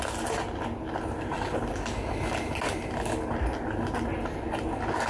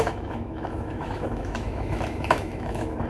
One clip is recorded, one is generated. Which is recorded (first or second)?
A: first